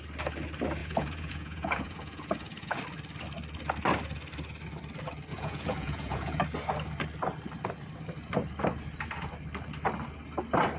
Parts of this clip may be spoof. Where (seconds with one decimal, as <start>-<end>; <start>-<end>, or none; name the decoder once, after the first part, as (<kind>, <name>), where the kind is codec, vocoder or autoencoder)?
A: 0.8-2.8 (vocoder, Vocos); 5.3-6.4